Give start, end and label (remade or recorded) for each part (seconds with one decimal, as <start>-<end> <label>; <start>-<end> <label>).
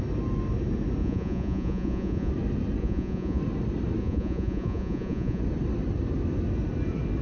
0.0-1.0 recorded; 1.0-2.3 remade; 2.3-2.8 recorded; 2.8-3.4 remade; 3.4-4.0 recorded; 4.0-5.4 remade; 5.4-7.2 recorded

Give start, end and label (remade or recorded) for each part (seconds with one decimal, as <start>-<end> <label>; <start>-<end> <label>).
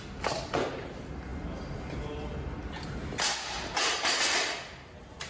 0.0-5.3 recorded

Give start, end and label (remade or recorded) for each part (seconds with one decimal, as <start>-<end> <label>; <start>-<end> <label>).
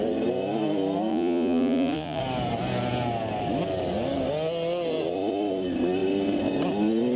0.0-1.1 recorded; 1.1-2.2 remade; 2.2-7.2 recorded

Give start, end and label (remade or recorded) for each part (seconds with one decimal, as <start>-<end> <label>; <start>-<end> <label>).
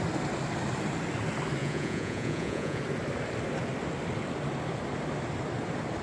0.0-1.6 recorded; 1.6-2.8 remade; 2.8-6.0 recorded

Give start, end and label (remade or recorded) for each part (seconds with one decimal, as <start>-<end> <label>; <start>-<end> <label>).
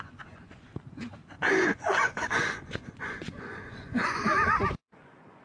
0.0-0.7 remade; 0.7-1.6 recorded; 1.6-5.4 remade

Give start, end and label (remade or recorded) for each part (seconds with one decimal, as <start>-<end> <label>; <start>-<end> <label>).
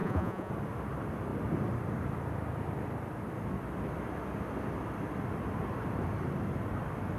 0.0-0.5 remade; 0.5-7.2 recorded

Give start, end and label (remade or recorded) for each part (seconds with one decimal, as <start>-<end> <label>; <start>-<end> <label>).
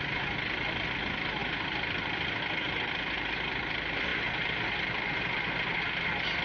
0.0-6.4 recorded